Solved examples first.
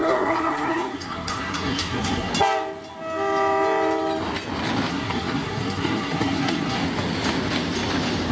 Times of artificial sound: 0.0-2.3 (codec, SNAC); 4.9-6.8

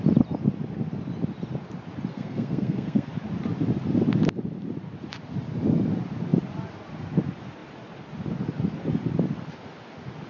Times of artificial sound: 2.1-3.1 (codec, SNAC)

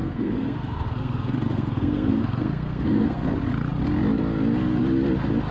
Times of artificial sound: 0.0-3.3 (codec, SNAC)

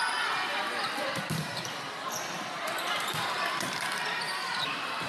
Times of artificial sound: none